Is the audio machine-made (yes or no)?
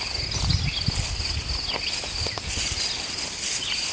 no